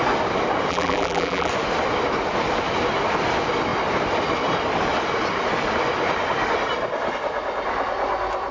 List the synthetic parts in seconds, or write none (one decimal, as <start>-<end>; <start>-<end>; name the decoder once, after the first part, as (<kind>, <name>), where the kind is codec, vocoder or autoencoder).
0.7-1.5 (vocoder, BigVGAN v2)